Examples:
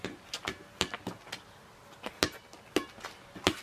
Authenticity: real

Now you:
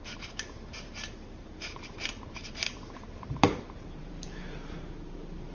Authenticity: fake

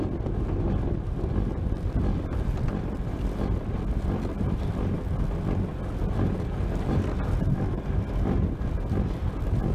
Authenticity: real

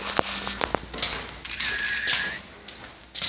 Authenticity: real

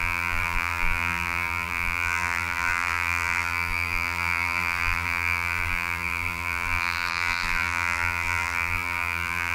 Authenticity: fake